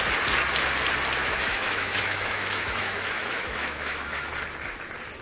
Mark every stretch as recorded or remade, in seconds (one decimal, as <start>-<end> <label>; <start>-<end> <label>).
0.0-1.2 recorded; 1.2-4.3 remade; 4.3-5.2 recorded